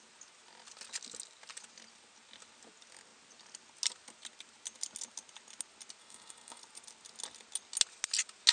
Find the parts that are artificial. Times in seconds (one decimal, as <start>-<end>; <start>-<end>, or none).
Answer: 6.0-6.6